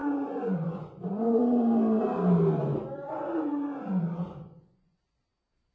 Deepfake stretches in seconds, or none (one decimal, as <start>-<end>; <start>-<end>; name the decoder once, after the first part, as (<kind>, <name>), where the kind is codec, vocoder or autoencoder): 0.0-1.4 (vocoder, Vocos); 2.7-5.0